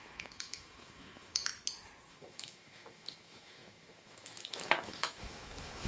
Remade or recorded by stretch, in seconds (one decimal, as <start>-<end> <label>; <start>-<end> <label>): 0.0-1.5 remade; 1.5-2.1 recorded; 2.1-5.9 remade